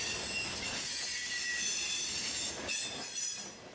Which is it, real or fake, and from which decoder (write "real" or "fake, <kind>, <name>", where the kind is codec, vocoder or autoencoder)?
real